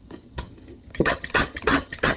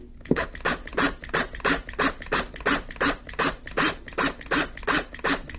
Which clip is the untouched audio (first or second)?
second